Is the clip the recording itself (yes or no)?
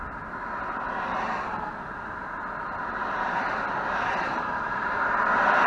yes